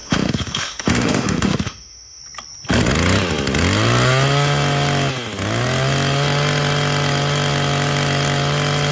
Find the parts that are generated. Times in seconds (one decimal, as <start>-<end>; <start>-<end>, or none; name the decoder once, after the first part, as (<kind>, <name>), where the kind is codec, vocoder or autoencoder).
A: 0.0-2.2 (autoencoder, DAC-VAE)